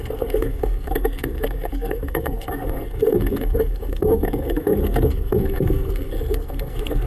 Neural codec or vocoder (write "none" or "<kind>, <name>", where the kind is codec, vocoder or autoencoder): codec, SNAC